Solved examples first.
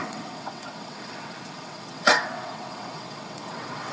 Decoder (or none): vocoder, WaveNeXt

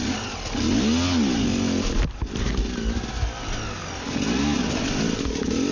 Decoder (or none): none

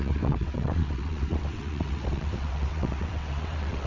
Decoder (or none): vocoder, WaveNeXt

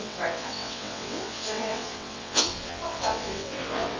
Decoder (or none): vocoder, WaveNeXt